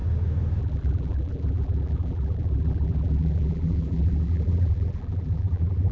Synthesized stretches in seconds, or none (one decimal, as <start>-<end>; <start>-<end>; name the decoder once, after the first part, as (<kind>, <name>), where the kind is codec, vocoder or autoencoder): 0.6-5.9 (vocoder, BigVGAN v2)